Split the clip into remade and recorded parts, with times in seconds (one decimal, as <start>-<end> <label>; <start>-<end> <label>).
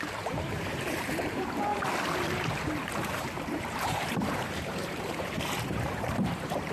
0.0-1.7 remade; 1.7-2.5 recorded; 2.5-6.7 remade